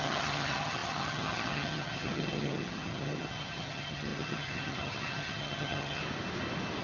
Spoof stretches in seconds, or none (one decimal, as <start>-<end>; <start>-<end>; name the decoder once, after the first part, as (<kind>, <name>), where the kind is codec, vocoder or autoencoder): 0.0-6.0 (vocoder, HiFi-GAN)